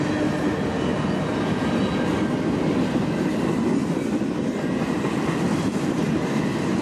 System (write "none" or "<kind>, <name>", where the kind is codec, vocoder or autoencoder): none